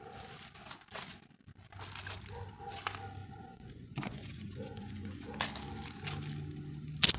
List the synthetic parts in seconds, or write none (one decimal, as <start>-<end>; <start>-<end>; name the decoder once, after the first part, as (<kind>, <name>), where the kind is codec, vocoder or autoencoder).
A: 3.2-5.3 (vocoder, Vocos)